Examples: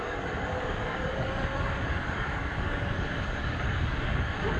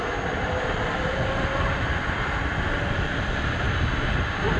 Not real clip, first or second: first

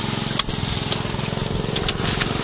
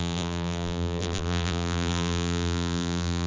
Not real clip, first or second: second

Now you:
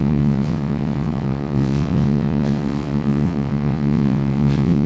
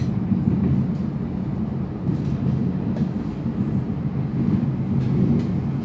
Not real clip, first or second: first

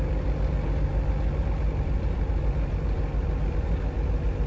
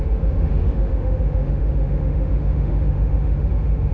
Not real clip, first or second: second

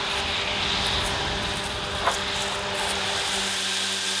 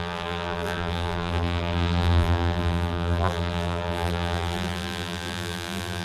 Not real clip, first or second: second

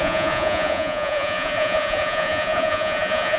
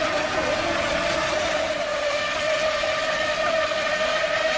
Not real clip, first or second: first